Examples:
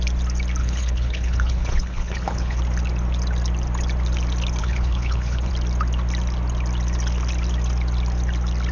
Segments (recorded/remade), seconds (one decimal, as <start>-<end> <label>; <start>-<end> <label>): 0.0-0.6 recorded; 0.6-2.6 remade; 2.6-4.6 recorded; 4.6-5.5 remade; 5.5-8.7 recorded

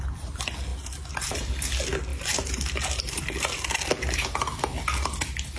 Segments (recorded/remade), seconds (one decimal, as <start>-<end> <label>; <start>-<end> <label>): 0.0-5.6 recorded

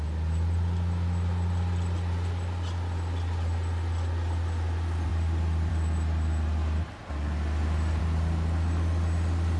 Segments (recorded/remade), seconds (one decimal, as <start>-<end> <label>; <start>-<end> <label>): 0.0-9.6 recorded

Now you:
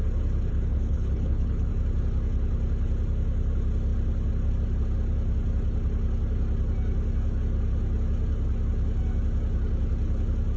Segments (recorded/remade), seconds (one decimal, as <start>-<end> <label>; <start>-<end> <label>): 0.0-0.5 recorded; 0.5-1.7 remade; 1.7-10.6 recorded